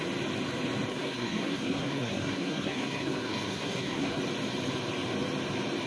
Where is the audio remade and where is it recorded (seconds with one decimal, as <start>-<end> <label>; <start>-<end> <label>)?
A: 0.0-0.9 recorded; 0.9-4.2 remade; 4.2-5.9 recorded